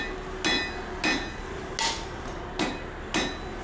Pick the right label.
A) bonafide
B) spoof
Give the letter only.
A